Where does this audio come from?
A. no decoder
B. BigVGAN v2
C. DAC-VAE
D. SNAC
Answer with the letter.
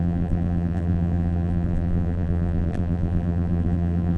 B